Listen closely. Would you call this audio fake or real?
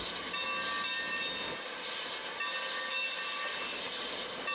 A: real